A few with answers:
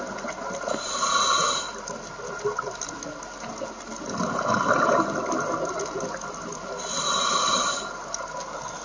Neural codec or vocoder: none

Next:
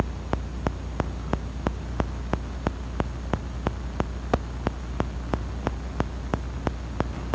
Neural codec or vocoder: none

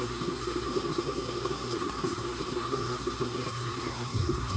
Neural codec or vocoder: codec, SNAC